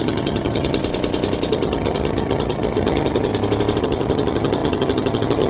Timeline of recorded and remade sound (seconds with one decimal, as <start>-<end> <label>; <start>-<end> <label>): 0.0-0.8 remade; 0.8-1.5 recorded; 1.5-3.3 remade; 3.3-3.8 recorded; 3.8-5.5 remade